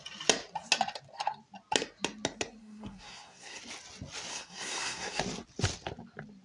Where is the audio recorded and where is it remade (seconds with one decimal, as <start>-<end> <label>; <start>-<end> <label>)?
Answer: 0.0-2.6 recorded; 2.6-3.6 remade; 3.6-4.3 recorded; 4.3-5.2 remade; 5.2-6.4 recorded